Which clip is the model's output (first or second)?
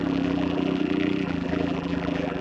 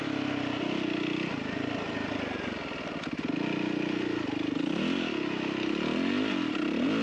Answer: first